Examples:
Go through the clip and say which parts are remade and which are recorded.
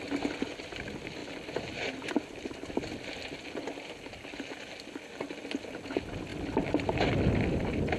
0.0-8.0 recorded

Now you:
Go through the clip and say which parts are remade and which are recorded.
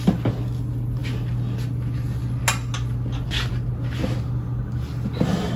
0.0-5.6 recorded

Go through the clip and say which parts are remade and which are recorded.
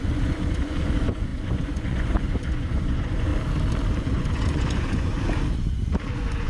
0.0-3.3 remade; 3.3-4.0 recorded; 4.0-5.1 remade; 5.1-6.1 recorded; 6.1-6.5 remade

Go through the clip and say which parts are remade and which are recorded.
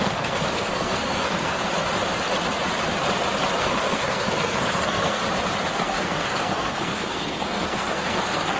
0.0-1.7 remade; 1.7-3.6 recorded; 3.6-5.2 remade; 5.2-5.7 recorded; 5.7-8.6 remade